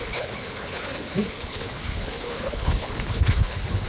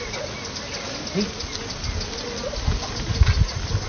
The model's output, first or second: first